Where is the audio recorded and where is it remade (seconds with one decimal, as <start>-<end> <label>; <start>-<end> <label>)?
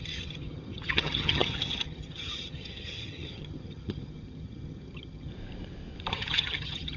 0.0-5.3 remade; 5.3-6.1 recorded; 6.1-7.0 remade